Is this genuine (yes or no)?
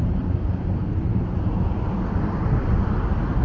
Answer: yes